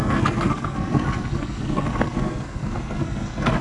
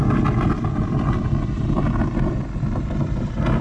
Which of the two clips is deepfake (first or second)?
first